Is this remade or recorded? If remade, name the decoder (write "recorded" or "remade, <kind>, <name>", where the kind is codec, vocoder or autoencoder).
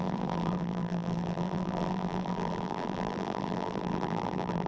remade, vocoder, BigVGAN v2